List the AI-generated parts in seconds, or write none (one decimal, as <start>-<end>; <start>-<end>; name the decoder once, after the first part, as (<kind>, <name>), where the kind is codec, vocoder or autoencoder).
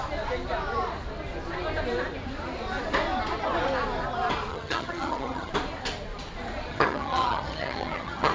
4.5-5.5 (vocoder, HiFi-GAN); 6.7-8.3